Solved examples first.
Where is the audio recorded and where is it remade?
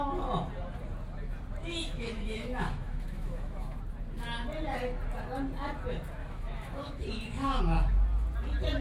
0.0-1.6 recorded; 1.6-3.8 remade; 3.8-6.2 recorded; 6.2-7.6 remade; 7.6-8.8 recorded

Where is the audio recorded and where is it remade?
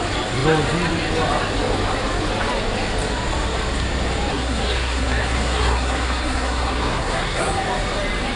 0.0-4.3 recorded; 4.3-7.4 remade; 7.4-8.4 recorded